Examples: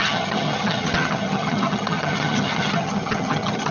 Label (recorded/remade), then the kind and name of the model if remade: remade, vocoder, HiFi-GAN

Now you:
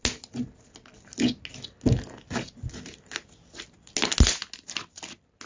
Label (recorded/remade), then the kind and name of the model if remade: recorded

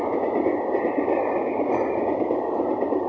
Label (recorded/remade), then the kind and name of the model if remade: recorded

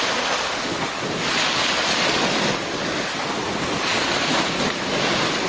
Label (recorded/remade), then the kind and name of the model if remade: recorded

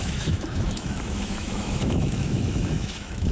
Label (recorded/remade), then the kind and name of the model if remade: remade, autoencoder, DAC-VAE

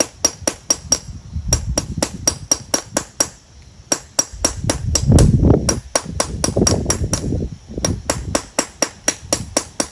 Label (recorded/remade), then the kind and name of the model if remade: recorded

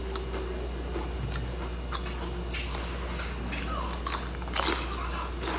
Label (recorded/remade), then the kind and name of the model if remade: recorded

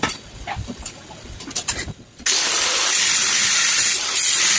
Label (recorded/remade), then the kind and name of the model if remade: recorded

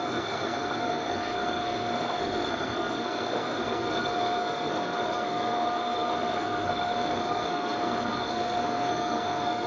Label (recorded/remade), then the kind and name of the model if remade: remade, codec, SNAC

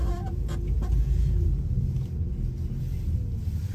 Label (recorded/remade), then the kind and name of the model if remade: recorded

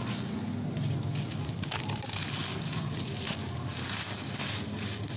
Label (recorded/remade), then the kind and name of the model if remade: recorded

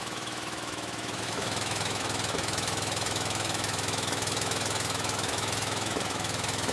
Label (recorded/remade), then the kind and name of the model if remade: remade, autoencoder, DAC-VAE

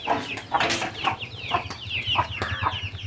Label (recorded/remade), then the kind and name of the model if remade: recorded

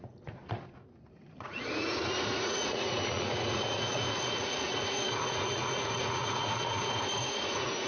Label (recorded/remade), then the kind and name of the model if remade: remade, vocoder, Vocos